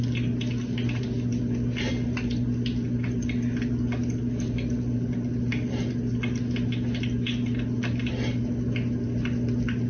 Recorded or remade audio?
recorded